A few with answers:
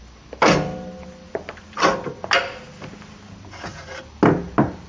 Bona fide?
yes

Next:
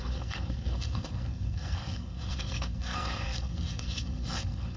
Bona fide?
no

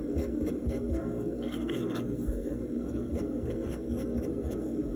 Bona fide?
no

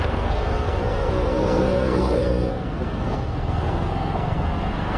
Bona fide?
no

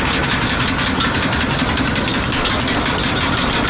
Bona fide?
yes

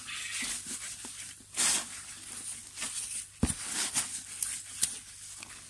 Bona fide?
yes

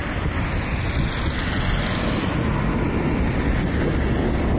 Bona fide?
yes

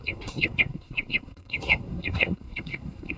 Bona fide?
no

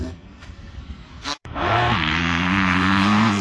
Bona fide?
no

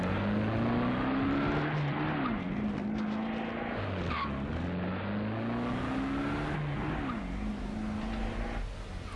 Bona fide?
yes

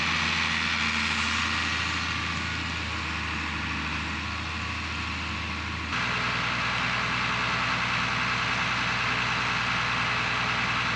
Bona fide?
yes